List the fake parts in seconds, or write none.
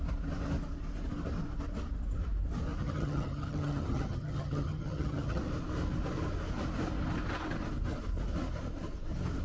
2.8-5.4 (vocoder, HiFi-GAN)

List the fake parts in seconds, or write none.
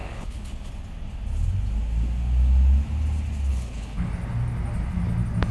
0.0-0.7 (codec, HILCodec); 3.5-4.1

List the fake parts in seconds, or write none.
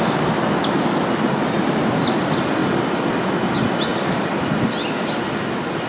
2.6-3.3 (vocoder, BigVGAN v2); 3.9-4.4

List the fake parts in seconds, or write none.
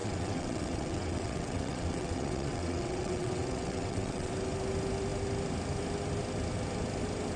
0.0-4.3 (vocoder, WaveNeXt)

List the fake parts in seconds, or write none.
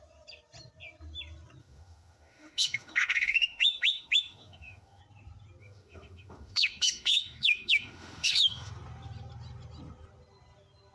1.6-5.0 (autoencoder, DAC-VAE); 5.6-8.7